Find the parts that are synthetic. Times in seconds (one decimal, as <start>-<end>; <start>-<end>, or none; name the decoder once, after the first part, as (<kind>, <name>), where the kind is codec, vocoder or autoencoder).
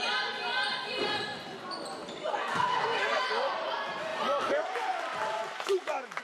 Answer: 2.3-3.3 (codec, SNAC)